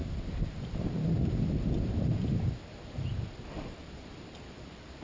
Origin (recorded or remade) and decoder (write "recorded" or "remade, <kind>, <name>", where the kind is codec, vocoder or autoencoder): recorded